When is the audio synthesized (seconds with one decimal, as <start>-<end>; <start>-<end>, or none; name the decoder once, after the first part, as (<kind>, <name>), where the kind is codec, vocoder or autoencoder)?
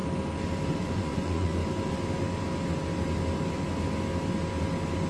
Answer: 0.8-1.6 (vocoder, Vocos)